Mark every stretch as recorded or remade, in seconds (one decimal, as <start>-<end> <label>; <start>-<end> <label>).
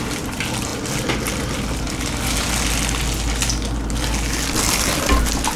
0.0-5.6 recorded